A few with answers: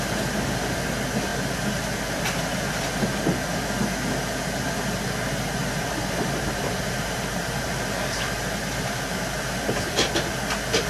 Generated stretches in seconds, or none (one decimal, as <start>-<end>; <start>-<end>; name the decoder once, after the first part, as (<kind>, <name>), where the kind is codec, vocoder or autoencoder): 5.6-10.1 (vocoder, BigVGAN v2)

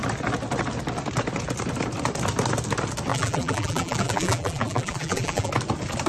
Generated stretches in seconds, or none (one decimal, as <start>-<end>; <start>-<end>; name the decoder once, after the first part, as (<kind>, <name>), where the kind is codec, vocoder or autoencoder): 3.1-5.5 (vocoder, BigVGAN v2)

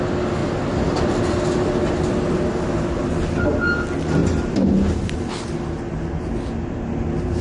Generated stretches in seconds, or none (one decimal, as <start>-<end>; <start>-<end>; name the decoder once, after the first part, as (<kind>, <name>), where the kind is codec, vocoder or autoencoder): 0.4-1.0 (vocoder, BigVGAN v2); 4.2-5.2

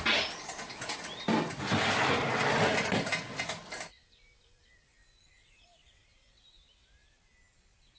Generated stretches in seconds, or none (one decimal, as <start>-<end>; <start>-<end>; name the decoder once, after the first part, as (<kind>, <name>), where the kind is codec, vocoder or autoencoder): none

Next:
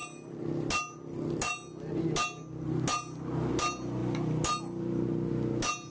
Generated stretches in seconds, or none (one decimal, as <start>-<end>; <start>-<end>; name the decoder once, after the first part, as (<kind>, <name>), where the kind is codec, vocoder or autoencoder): none